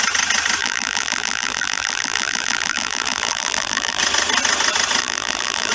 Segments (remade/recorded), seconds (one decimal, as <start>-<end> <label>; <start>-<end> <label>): 0.0-0.6 recorded; 0.6-4.0 remade; 4.0-5.0 recorded; 5.0-5.7 remade